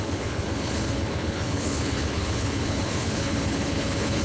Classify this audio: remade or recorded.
remade